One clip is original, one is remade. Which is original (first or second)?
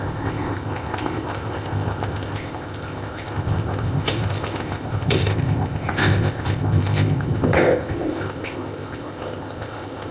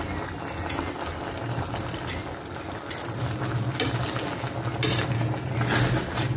second